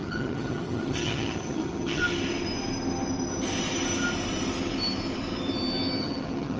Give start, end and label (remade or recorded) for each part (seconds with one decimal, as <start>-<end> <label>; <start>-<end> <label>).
0.0-2.0 remade; 2.0-6.0 recorded; 6.0-6.6 remade